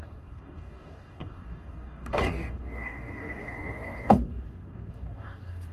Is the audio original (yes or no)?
no